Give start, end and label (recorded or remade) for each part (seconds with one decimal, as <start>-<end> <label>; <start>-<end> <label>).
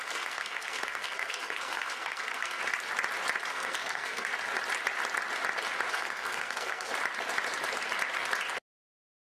0.0-2.6 remade; 2.6-3.5 recorded; 3.5-4.3 remade; 4.3-5.9 recorded; 5.9-6.9 remade; 6.9-8.7 recorded; 8.7-9.3 remade